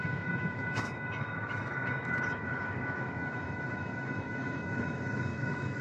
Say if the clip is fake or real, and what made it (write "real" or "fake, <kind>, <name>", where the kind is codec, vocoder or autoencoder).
fake, autoencoder, DAC-VAE